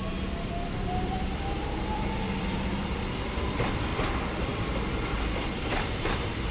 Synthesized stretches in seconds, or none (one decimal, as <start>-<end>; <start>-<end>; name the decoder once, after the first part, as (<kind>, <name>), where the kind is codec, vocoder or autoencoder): 0.0-3.9 (vocoder, BigVGAN v2); 5.4-6.5